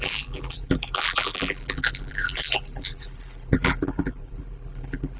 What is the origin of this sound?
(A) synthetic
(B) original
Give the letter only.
A